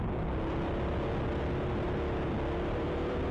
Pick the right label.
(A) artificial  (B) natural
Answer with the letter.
B